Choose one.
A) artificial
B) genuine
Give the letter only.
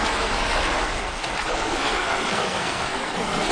A